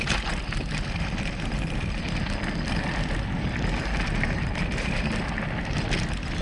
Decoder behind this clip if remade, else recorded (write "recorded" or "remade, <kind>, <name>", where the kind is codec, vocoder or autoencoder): recorded